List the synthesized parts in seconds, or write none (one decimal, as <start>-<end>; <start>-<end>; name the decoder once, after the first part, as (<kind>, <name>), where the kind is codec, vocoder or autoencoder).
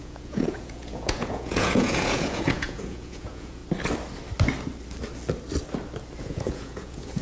0.0-3.6 (vocoder, Vocos); 6.2-7.2